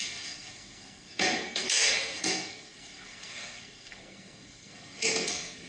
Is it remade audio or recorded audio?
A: remade